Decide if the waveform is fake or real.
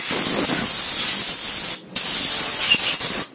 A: real